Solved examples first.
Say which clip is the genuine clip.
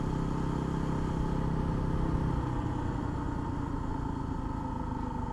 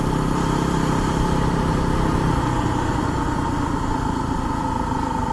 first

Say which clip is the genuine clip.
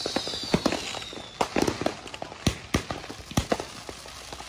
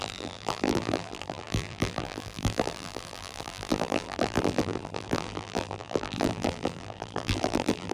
first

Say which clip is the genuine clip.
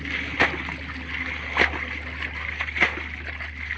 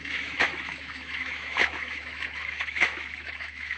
first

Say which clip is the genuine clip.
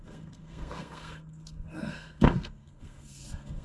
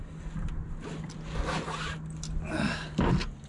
second